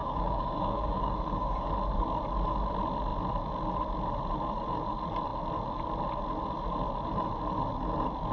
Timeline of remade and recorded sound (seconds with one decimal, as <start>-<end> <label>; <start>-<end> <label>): 0.0-1.7 remade; 1.7-8.3 recorded